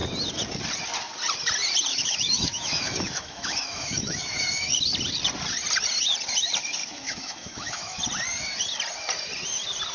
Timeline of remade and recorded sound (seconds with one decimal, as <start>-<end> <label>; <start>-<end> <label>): 0.0-1.9 recorded; 1.9-4.7 remade; 4.7-6.8 recorded; 6.8-8.0 remade; 8.0-9.9 recorded

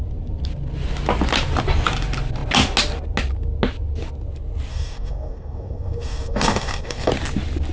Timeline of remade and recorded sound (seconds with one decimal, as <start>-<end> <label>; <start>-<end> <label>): 0.0-4.7 recorded; 4.7-7.1 remade; 7.1-7.7 recorded

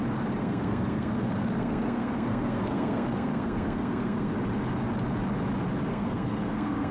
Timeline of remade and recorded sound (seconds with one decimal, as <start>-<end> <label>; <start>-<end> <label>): 0.0-0.4 recorded; 0.4-4.3 remade; 4.3-5.9 recorded; 5.9-6.9 remade

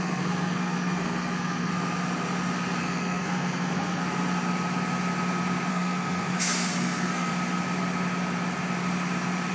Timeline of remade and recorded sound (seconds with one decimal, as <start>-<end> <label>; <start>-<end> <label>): 0.0-1.7 remade; 1.7-2.8 recorded; 2.8-4.0 remade; 4.0-5.7 recorded; 5.7-7.3 remade; 7.3-9.5 recorded

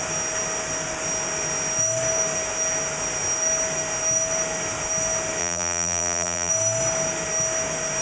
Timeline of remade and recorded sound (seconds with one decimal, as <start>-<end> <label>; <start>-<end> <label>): 0.0-5.4 recorded; 5.4-6.5 remade; 6.5-8.0 recorded

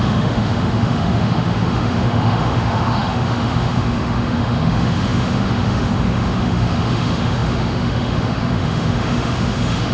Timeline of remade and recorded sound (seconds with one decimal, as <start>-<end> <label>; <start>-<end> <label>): 0.0-9.9 remade

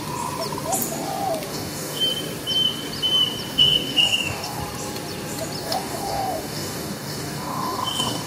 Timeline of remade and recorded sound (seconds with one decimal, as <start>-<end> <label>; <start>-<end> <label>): 0.0-1.5 recorded; 1.5-2.0 remade; 2.0-3.5 recorded; 3.5-4.6 remade; 4.6-5.6 recorded; 5.6-8.3 remade